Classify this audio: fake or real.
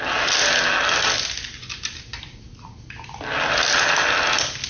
real